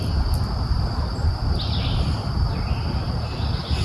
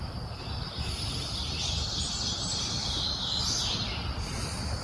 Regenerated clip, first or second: second